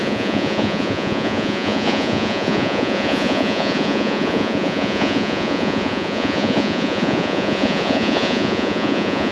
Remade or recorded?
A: remade